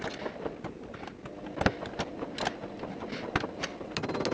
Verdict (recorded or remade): recorded